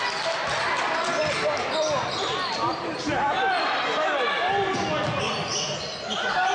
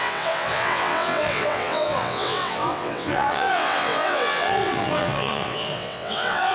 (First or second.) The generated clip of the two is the second